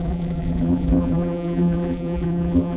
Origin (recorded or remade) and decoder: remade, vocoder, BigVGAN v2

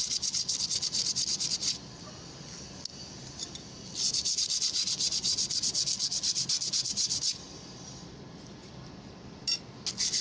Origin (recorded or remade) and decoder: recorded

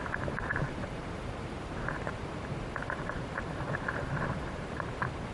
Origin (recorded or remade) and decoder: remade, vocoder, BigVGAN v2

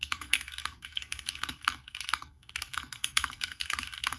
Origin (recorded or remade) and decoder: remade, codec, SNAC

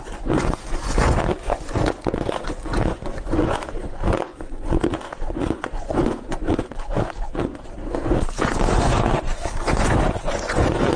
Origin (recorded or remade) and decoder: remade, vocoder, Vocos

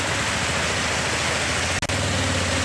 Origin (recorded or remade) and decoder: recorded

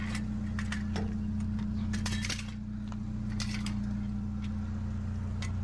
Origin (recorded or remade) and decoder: recorded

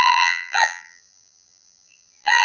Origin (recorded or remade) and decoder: remade, vocoder, BigVGAN v2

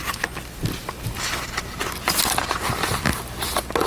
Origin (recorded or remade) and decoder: recorded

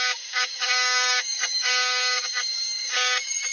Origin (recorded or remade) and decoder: remade, codec, DAC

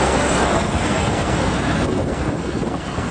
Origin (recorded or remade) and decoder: remade, codec, SNAC